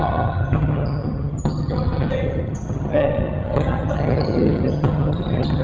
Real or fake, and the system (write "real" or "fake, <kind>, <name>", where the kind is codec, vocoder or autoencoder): fake, vocoder, HiFi-GAN